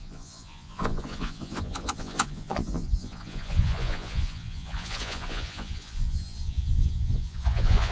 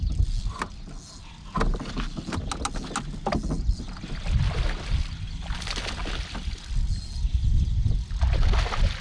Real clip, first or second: second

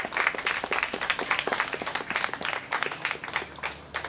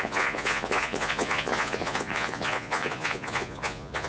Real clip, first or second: first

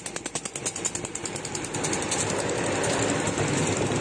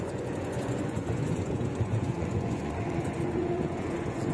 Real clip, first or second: first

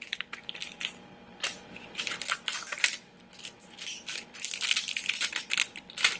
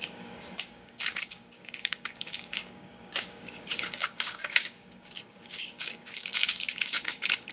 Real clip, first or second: first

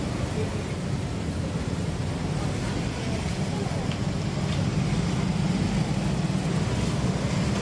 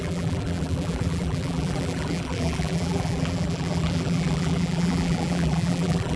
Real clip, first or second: first